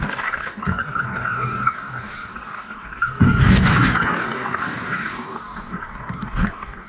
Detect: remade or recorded remade